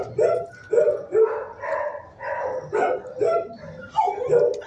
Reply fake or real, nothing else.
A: real